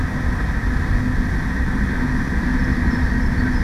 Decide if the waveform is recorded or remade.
recorded